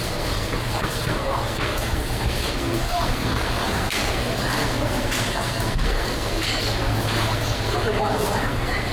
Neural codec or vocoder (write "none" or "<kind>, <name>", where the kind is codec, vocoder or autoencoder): codec, SNAC